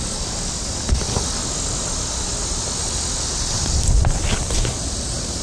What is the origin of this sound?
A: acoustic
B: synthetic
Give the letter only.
B